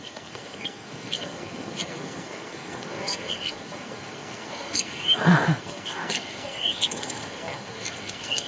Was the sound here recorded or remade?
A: remade